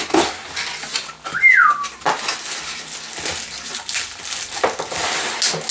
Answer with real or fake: real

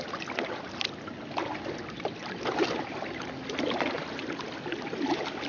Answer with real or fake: real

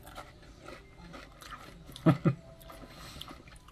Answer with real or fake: real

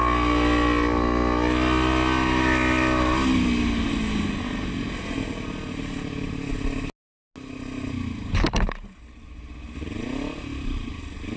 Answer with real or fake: real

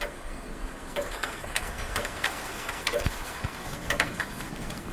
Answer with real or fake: fake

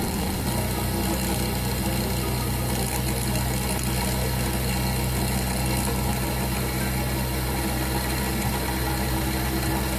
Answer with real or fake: real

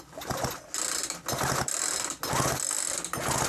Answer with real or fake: real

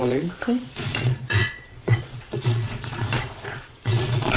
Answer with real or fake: fake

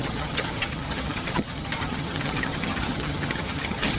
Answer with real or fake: fake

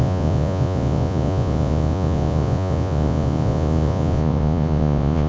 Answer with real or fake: fake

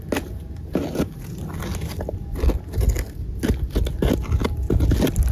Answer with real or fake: real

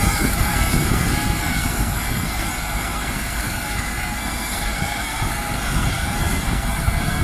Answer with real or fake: fake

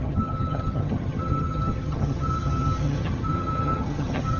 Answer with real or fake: fake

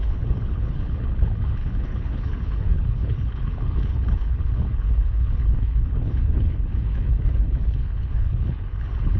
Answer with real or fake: fake